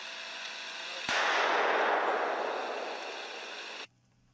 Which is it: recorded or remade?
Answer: remade